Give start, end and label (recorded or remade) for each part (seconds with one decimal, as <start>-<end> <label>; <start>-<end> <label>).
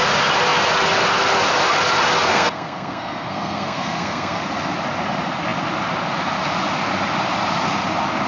0.0-2.3 recorded; 2.3-4.4 remade; 4.4-8.3 recorded